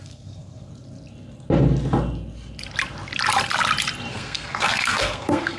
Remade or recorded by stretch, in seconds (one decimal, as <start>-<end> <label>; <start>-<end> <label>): 0.0-0.7 remade; 0.7-4.1 recorded; 4.1-5.6 remade

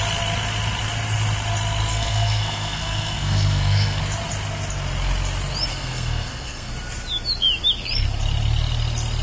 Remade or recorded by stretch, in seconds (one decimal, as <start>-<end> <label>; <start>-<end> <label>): 0.0-1.9 recorded; 1.9-4.0 remade; 4.0-5.7 recorded; 5.7-6.7 remade; 6.7-9.2 recorded

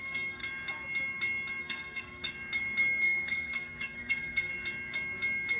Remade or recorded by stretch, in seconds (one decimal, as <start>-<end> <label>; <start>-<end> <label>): 0.0-0.4 remade; 0.4-1.6 recorded; 1.6-2.3 remade; 2.3-3.0 recorded; 3.0-4.5 remade; 4.5-5.6 recorded

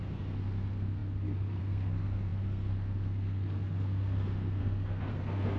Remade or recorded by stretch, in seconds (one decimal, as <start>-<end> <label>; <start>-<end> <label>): 0.0-5.6 remade